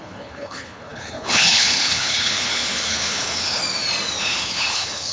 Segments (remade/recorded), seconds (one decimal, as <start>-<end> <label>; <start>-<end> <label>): 0.0-3.6 remade; 3.6-4.2 recorded; 4.2-5.1 remade